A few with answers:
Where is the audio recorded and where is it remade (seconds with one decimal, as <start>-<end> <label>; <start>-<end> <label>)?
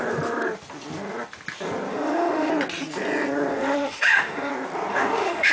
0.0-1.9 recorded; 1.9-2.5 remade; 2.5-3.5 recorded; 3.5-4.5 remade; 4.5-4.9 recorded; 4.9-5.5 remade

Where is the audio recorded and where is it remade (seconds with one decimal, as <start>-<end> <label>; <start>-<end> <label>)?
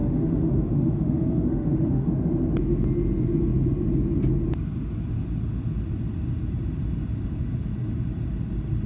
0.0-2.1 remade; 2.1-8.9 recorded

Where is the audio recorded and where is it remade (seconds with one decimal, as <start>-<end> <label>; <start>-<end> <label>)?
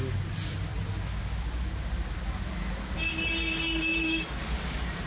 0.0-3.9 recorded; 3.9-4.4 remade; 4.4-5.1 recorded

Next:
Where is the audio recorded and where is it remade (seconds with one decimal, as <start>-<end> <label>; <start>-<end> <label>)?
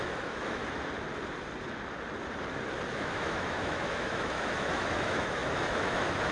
0.0-0.6 remade; 0.6-2.9 recorded; 2.9-6.3 remade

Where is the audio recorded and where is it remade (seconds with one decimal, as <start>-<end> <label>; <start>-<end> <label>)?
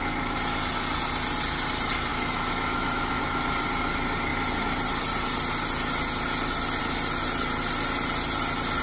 0.0-2.1 recorded; 2.1-3.2 remade; 3.2-8.8 recorded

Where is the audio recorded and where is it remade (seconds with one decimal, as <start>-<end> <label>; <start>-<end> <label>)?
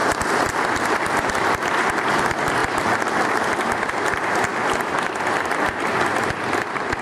0.0-7.0 recorded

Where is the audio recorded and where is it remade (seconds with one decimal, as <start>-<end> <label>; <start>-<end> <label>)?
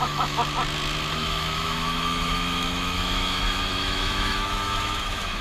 0.0-0.4 remade; 0.4-1.1 recorded; 1.1-5.4 remade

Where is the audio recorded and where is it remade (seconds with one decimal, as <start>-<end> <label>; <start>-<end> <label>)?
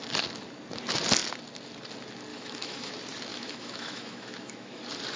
0.0-2.3 recorded; 2.3-2.9 remade; 2.9-3.3 recorded; 3.3-4.8 remade; 4.8-5.2 recorded